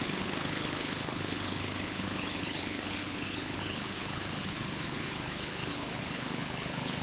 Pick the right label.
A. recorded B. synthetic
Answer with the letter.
B